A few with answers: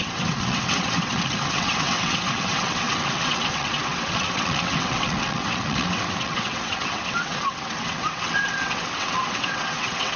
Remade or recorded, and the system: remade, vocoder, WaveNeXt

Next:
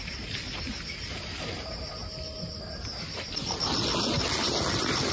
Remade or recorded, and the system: recorded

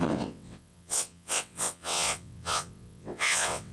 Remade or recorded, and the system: remade, vocoder, WaveNeXt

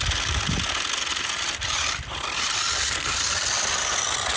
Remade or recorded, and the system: recorded